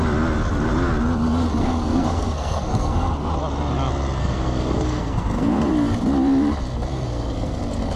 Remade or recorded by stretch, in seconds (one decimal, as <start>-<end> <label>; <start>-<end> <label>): 0.0-1.6 recorded; 1.6-3.3 remade; 3.3-4.2 recorded; 4.2-5.7 remade; 5.7-6.9 recorded; 6.9-7.6 remade; 7.6-8.0 recorded